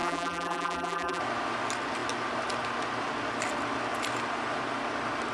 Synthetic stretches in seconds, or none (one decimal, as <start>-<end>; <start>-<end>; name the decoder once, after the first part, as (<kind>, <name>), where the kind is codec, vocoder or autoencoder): 0.0-1.2 (vocoder, BigVGAN v2)